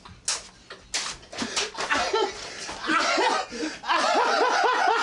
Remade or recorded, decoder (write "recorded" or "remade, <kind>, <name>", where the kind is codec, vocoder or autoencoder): recorded